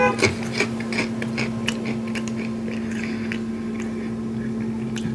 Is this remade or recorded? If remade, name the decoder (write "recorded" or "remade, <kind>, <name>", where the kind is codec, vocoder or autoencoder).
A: recorded